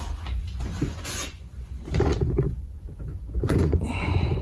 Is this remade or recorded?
remade